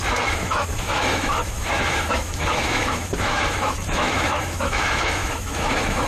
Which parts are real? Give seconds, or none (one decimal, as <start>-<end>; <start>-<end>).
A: none